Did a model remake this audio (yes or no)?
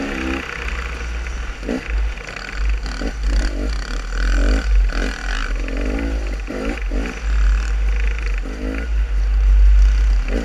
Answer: no